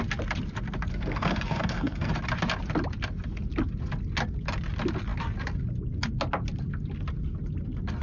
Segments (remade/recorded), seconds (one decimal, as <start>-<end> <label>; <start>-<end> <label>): 0.0-0.9 recorded; 0.9-2.1 remade; 2.1-8.0 recorded